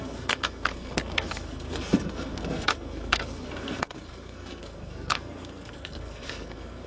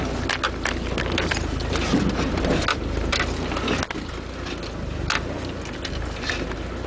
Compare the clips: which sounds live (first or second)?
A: second